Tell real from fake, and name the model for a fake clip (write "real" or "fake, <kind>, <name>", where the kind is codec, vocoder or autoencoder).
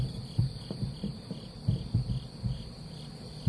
real